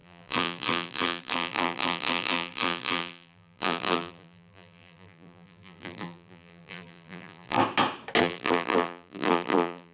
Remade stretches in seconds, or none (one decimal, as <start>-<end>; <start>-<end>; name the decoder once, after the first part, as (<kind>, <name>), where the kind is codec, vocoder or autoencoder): 0.0-7.6 (vocoder, BigVGAN v2); 8.2-9.9

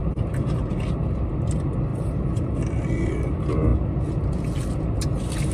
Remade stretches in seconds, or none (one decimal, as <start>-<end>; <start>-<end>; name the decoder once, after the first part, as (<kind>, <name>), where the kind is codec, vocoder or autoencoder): 0.0-0.7 (vocoder, BigVGAN v2); 1.9-2.5

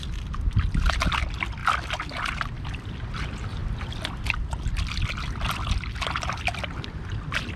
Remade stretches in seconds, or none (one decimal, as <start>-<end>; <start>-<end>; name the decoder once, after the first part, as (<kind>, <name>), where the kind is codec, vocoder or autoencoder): none

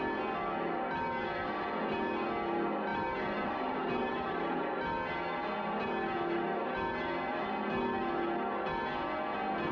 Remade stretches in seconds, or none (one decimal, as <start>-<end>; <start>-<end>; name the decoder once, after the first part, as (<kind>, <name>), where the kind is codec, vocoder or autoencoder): 2.9-4.6 (vocoder, BigVGAN v2)

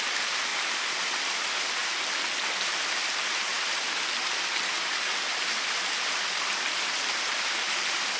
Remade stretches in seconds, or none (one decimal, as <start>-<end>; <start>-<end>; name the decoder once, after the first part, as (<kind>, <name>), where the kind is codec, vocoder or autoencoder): 0.5-1.2 (vocoder, BigVGAN v2); 1.8-2.6